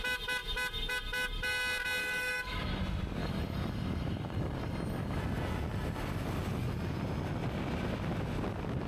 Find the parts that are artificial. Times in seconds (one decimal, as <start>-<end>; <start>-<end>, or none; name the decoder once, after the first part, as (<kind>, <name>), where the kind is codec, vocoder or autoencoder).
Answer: 2.0-2.8 (codec, DAC); 3.2-5.2